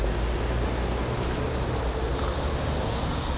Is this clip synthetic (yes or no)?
no